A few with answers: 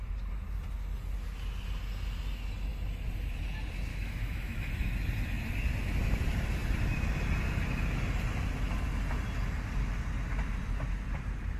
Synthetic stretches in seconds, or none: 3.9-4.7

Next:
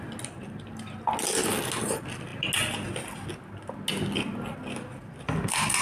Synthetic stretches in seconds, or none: none

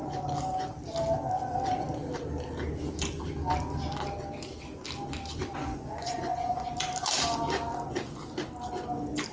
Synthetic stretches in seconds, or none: 5.7-6.7

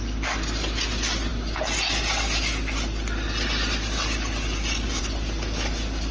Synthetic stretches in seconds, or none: none